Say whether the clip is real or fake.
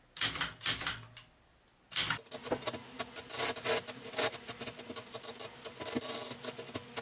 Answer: real